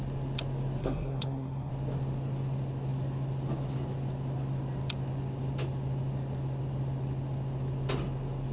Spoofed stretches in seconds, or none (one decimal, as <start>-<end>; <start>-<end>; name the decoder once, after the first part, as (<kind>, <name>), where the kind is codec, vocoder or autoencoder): 0.8-1.7 (codec, SNAC)